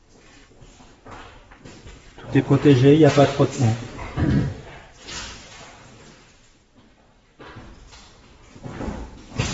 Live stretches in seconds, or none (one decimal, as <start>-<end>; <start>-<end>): 0.0-4.0; 6.0-9.5